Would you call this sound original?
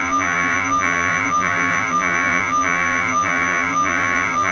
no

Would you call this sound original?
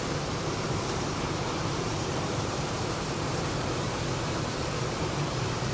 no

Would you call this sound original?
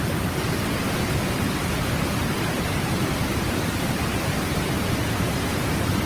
no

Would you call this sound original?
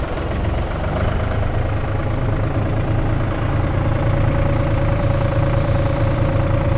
no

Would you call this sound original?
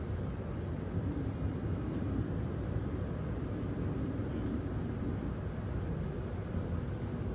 yes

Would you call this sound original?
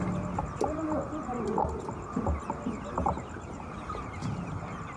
yes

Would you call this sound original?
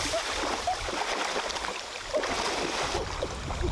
yes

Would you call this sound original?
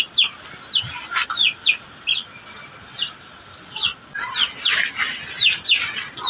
yes